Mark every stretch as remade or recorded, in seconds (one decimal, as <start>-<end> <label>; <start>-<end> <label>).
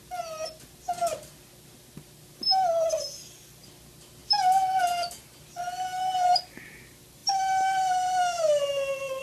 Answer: 0.0-9.2 recorded